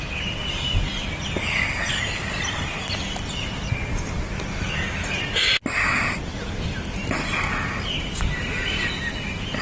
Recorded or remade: recorded